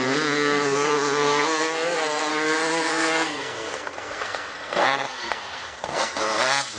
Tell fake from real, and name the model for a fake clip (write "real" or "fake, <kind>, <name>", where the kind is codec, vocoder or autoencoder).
fake, codec, SNAC